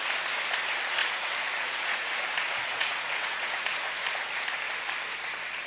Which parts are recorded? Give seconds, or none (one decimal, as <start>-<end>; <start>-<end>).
0.0-1.0; 3.9-5.7